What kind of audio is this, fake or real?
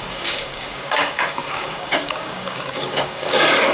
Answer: fake